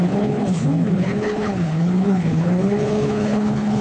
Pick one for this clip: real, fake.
fake